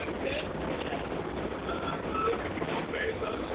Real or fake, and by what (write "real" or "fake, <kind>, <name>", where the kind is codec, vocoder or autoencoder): real